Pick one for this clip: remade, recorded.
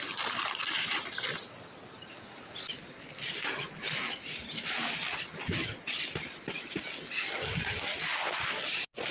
recorded